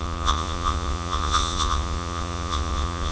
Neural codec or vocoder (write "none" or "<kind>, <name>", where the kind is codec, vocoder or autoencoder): vocoder, Vocos